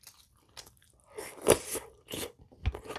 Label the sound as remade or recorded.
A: recorded